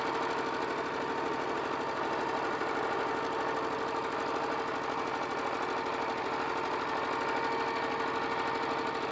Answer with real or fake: real